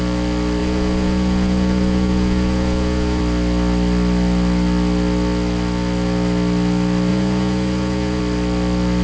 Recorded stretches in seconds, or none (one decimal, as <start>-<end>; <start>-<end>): 0.0-0.6; 3.2-7.1; 8.2-9.0